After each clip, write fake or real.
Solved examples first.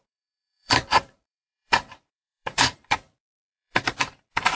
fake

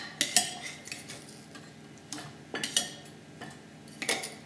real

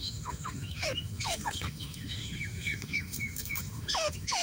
fake